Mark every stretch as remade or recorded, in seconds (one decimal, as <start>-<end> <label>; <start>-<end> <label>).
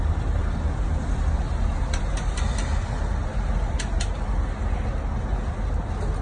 0.0-6.2 recorded